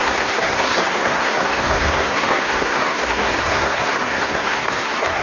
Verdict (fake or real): fake